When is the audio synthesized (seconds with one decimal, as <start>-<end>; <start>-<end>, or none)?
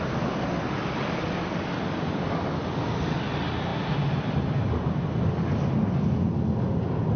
none